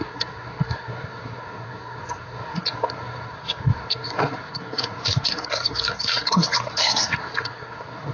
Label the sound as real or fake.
fake